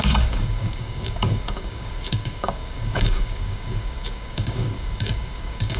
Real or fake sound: fake